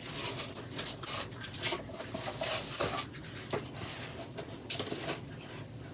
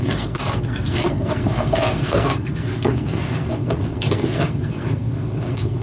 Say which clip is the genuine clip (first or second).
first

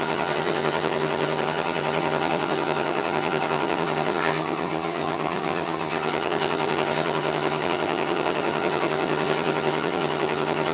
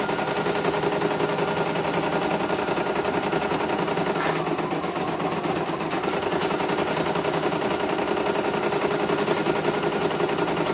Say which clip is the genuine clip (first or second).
second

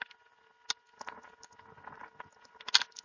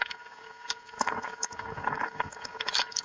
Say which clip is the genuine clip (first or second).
first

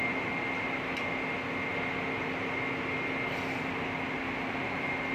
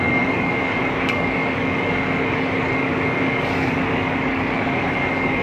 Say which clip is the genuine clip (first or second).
first